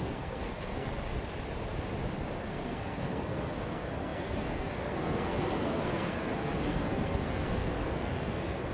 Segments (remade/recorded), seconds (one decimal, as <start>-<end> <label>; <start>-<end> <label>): 0.0-1.1 remade; 1.1-2.4 recorded; 2.4-8.7 remade